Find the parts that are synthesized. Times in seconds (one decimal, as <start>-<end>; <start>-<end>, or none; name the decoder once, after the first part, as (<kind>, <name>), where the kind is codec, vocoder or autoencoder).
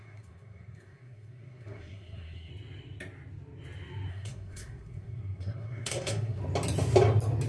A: 0.0-2.5 (codec, SNAC); 4.1-6.4